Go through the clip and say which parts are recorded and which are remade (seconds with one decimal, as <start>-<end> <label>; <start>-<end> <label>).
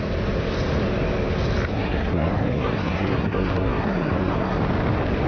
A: 0.0-1.7 recorded; 1.7-4.6 remade; 4.6-5.3 recorded